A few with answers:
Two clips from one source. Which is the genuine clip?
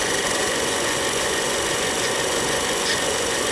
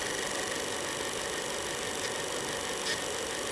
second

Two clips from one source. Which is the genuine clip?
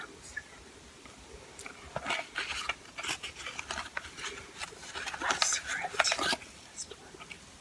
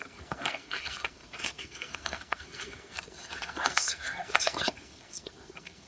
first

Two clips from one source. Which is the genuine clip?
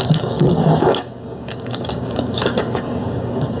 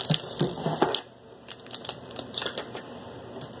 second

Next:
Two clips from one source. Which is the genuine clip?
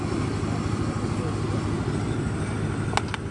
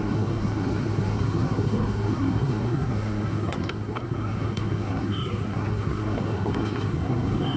first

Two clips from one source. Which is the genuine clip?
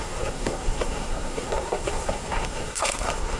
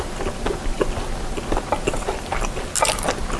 second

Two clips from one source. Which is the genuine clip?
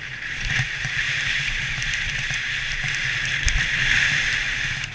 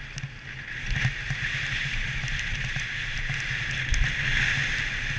second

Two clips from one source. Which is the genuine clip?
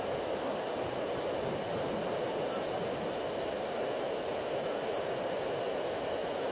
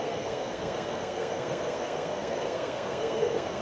first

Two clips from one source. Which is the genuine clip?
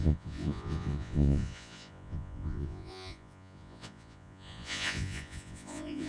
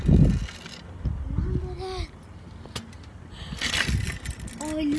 second